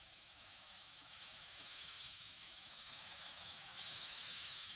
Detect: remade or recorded remade